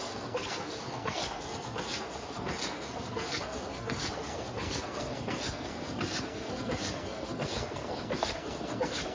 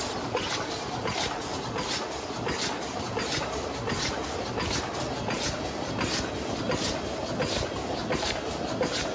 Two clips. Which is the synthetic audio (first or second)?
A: first